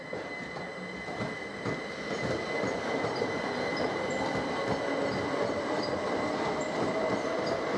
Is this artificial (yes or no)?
no